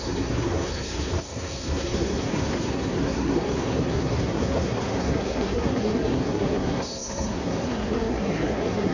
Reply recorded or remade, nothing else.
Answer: remade